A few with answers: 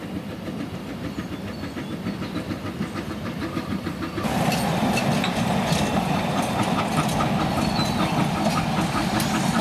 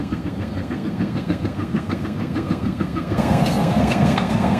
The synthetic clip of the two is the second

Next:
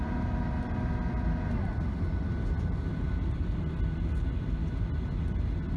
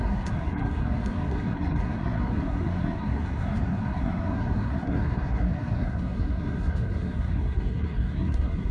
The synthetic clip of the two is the second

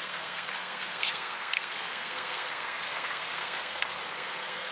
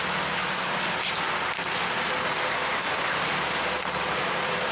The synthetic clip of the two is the first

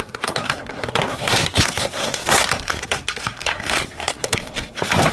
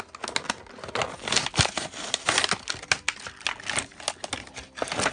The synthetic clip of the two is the first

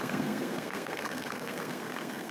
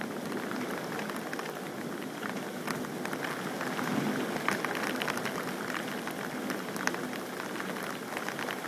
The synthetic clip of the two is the first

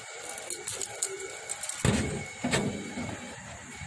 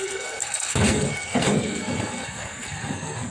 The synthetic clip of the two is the second